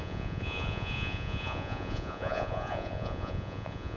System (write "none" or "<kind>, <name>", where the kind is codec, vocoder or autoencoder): vocoder, Vocos